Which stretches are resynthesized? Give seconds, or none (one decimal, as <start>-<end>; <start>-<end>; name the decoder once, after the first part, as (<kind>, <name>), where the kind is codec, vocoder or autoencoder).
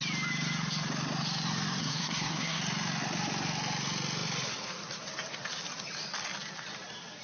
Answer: 1.8-2.6 (codec, SNAC)